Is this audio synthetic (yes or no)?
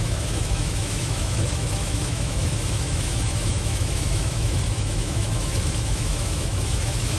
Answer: yes